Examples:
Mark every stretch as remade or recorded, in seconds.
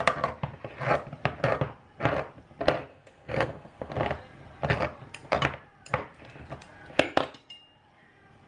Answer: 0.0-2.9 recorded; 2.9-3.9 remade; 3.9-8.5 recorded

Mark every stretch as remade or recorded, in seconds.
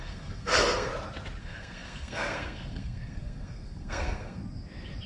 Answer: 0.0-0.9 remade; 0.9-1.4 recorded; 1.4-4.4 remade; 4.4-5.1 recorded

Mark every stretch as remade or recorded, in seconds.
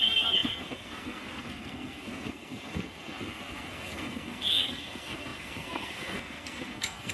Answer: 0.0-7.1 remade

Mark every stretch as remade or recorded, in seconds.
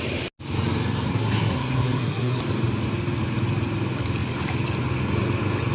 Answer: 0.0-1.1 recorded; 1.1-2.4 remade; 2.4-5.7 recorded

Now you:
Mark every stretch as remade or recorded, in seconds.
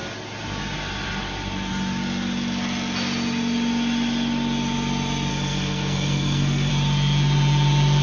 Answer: 0.0-5.3 recorded; 5.3-6.7 remade; 6.7-8.0 recorded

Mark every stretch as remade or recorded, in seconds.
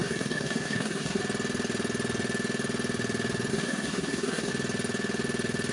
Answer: 0.0-1.2 remade; 1.2-3.5 recorded; 3.5-4.5 remade; 4.5-5.7 recorded